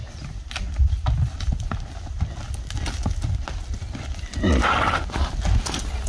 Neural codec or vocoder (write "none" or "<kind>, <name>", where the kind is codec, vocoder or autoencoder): none